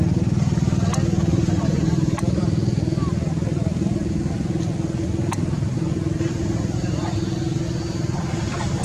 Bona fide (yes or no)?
yes